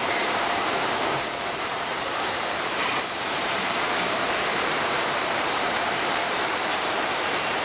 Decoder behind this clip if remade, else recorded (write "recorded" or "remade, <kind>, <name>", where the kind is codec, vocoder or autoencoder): remade, vocoder, BigVGAN v2